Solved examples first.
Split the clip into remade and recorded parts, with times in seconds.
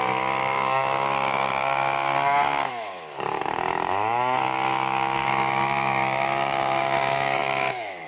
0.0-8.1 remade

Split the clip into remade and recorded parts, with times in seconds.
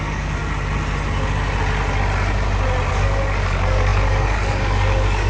0.0-0.4 remade; 0.4-2.9 recorded; 2.9-5.3 remade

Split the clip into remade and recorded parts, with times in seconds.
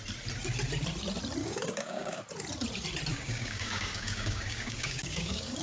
0.0-1.4 recorded; 1.4-2.2 remade; 2.2-3.1 recorded; 3.1-5.6 remade